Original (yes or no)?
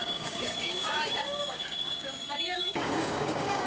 no